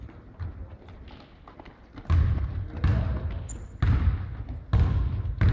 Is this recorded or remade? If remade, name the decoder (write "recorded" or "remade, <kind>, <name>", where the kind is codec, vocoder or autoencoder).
recorded